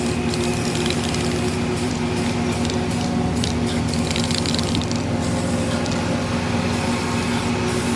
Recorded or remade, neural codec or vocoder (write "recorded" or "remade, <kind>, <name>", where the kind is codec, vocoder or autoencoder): remade, vocoder, BigVGAN v2